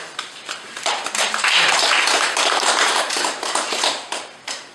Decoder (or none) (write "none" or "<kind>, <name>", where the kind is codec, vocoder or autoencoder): vocoder, BigVGAN v2